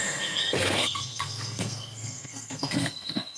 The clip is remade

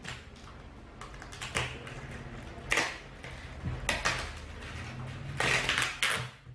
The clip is recorded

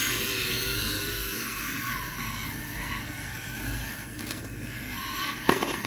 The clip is remade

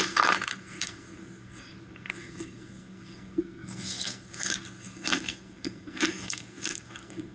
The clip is remade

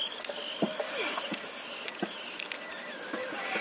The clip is recorded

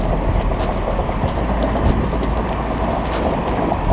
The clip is recorded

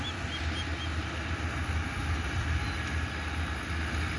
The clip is recorded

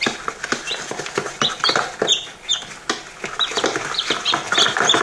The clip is recorded